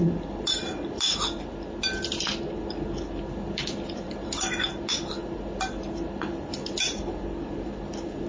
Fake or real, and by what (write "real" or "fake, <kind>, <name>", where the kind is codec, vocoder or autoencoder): real